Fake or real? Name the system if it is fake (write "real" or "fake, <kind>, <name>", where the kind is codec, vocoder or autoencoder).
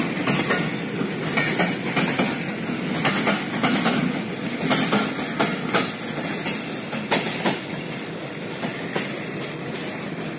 real